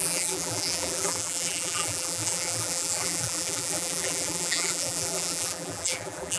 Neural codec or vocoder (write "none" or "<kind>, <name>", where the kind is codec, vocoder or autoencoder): vocoder, BigVGAN v2